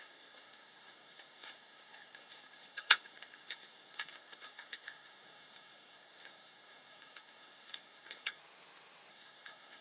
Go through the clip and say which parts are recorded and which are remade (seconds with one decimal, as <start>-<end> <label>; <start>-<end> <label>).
0.0-8.4 remade; 8.4-9.1 recorded; 9.1-9.8 remade